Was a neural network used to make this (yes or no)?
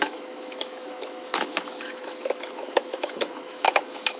yes